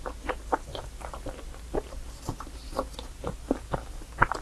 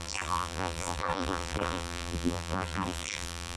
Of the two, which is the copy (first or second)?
second